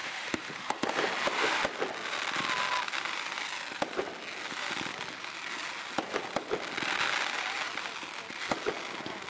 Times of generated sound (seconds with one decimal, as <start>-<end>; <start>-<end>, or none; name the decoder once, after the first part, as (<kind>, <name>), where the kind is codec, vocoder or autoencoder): 0.0-0.9 (autoencoder, DAC-VAE)